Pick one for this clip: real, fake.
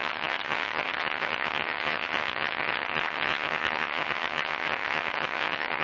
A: fake